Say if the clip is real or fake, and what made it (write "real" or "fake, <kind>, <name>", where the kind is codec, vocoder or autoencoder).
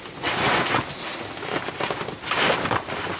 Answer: real